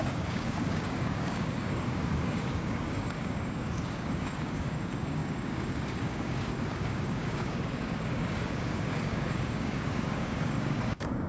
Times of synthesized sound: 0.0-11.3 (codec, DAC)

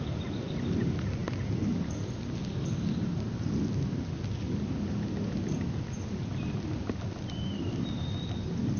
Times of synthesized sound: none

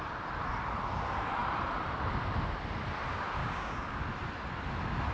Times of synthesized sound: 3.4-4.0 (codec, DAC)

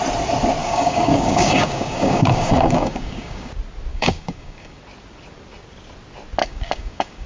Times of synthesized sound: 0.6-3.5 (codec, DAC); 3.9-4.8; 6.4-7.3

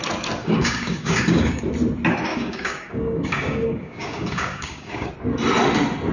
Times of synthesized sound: 0.4-1.6 (codec, DAC); 2.3-5.1

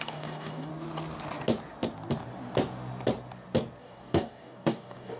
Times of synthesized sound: 0.0-0.7 (codec, DAC); 3.8-5.2

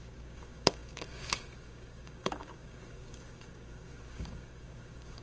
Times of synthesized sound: 0.0-5.2 (codec, DAC)